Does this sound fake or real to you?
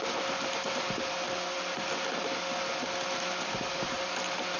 real